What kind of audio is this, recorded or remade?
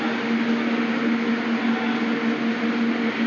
recorded